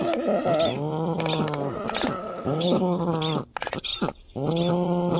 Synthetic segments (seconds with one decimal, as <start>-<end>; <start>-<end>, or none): 2.2-3.1